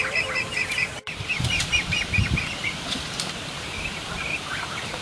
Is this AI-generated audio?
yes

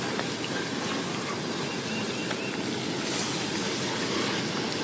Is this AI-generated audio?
no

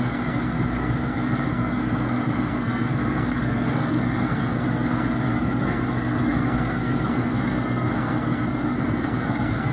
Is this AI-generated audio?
yes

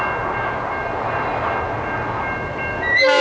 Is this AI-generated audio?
no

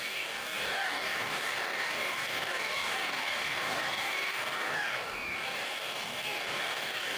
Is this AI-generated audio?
yes